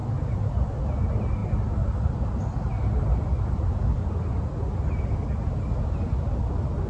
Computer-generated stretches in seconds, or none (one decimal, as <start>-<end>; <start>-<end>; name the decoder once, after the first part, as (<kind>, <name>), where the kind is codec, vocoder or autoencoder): none